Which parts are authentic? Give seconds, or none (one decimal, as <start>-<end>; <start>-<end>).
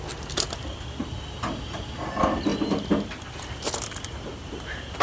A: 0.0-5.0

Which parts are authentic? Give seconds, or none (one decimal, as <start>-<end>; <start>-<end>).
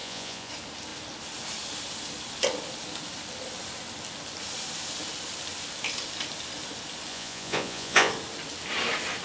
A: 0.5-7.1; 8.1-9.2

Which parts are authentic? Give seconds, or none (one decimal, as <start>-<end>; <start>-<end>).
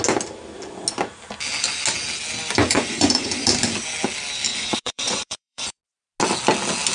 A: 0.0-2.6; 3.4-4.5; 5.8-6.9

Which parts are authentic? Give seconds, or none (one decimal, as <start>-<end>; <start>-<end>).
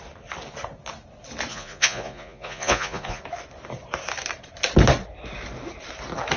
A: 0.0-1.5; 3.2-6.4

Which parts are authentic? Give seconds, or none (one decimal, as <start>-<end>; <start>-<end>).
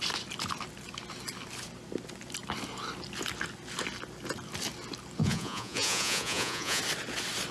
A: 0.0-5.2; 6.8-7.5